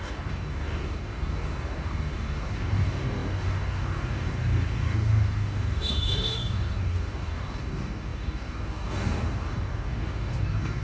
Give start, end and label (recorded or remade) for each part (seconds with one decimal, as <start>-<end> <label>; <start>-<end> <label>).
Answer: 0.0-10.8 remade